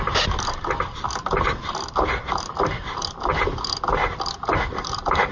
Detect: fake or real real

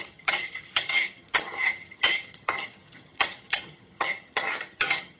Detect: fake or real fake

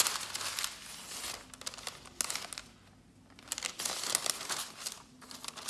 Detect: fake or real real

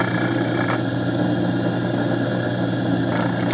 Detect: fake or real real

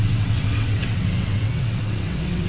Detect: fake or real fake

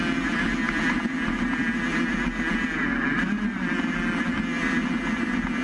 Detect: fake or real real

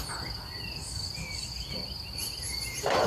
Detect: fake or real real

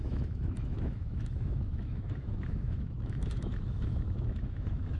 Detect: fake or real fake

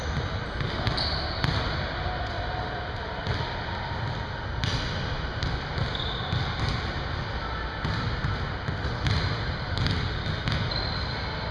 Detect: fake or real real